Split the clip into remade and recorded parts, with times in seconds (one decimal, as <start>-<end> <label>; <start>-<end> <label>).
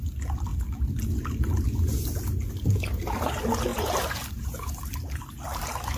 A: 0.0-3.7 recorded; 3.7-4.8 remade; 4.8-6.0 recorded